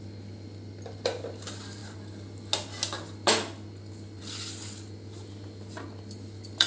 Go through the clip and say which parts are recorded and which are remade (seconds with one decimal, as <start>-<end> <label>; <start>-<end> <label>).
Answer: 0.0-1.8 remade; 1.8-4.2 recorded; 4.2-6.7 remade